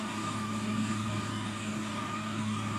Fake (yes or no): yes